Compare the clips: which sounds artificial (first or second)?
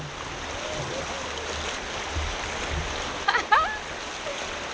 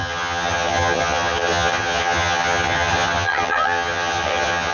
second